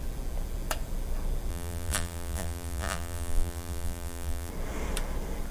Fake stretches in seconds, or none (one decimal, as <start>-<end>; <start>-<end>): 1.5-4.5